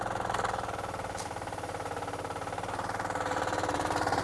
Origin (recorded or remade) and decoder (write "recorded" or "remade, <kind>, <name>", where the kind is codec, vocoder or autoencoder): remade, vocoder, BigVGAN v2